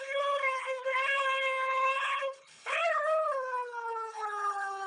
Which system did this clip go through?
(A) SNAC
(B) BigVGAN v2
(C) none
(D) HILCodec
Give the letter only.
D